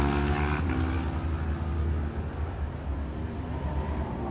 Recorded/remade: recorded